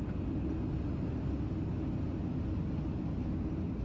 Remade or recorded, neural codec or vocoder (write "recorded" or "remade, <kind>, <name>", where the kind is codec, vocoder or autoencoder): recorded